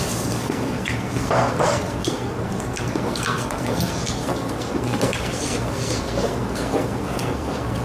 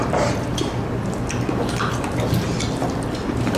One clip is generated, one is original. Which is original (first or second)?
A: second